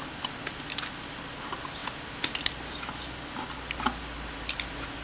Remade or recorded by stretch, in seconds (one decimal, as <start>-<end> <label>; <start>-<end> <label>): 0.0-5.0 recorded

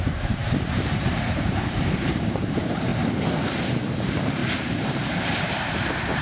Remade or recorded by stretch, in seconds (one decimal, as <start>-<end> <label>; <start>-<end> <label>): 0.0-2.9 remade; 2.9-3.6 recorded; 3.6-6.2 remade

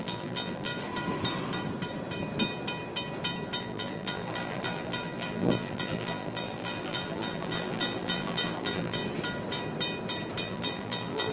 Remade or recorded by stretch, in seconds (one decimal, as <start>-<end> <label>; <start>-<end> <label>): 0.0-0.7 remade; 0.7-3.6 recorded; 3.6-9.0 remade; 9.0-10.4 recorded; 10.4-11.3 remade

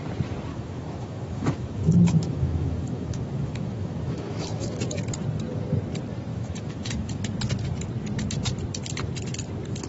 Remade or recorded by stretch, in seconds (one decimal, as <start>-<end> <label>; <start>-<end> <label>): 0.0-0.5 recorded; 0.5-5.0 remade; 5.0-6.3 recorded; 6.3-7.2 remade; 7.2-9.9 recorded

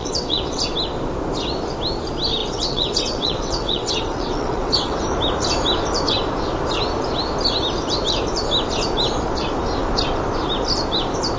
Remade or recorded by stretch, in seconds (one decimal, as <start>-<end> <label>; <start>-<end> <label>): 0.0-0.6 remade; 0.6-2.4 recorded; 2.4-5.0 remade; 5.0-11.4 recorded

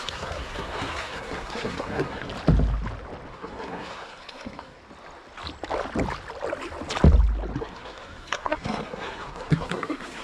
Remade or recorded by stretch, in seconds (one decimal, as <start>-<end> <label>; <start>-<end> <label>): 0.0-2.3 remade; 2.3-3.3 recorded; 3.3-4.8 remade; 4.8-7.6 recorded; 7.6-10.2 remade

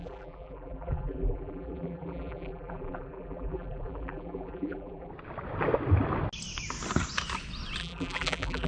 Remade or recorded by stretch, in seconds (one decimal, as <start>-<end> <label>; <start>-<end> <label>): 0.0-5.1 remade; 5.1-7.8 recorded; 7.8-8.7 remade